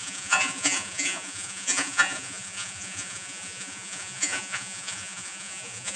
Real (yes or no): no